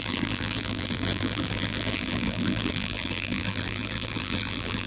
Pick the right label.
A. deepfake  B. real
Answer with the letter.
A